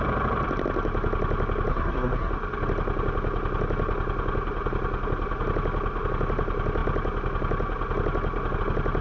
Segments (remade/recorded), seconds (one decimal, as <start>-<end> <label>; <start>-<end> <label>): 0.0-1.7 recorded; 1.7-2.3 remade; 2.3-9.0 recorded